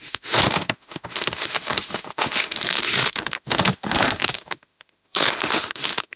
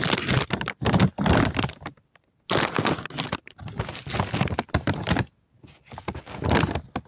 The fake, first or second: first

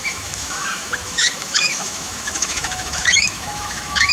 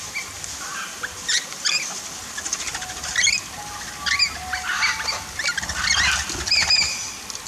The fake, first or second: first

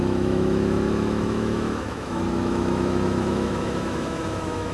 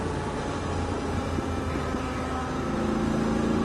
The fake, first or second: first